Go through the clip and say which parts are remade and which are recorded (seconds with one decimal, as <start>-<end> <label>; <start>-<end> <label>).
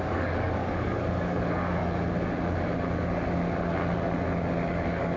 0.0-1.8 remade; 1.8-4.7 recorded; 4.7-5.2 remade